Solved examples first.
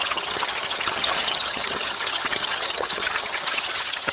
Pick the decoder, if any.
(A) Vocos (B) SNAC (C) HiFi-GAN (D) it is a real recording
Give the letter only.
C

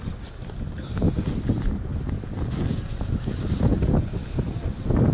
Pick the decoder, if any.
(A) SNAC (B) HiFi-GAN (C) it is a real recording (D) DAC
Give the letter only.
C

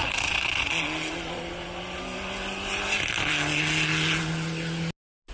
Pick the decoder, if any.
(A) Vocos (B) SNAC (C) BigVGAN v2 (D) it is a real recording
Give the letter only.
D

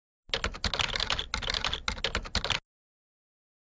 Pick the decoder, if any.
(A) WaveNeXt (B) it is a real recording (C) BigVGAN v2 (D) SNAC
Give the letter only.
B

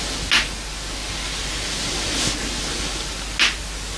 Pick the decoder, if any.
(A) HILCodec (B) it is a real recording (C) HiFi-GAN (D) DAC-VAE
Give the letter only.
B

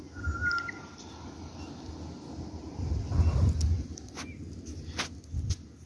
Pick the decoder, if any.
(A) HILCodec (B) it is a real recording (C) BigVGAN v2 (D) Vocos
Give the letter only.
B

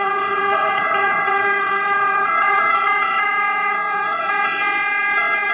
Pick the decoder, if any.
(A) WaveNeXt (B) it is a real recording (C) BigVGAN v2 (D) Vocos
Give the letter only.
A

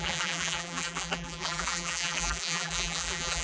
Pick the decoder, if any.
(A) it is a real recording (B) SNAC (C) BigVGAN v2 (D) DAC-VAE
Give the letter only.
C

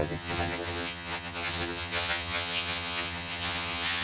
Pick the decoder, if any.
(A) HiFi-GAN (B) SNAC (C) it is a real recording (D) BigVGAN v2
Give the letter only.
A